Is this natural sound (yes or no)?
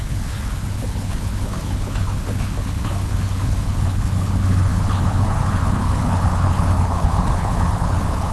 no